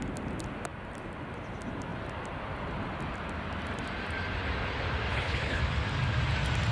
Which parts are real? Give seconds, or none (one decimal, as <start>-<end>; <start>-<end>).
0.0-5.1; 5.6-6.7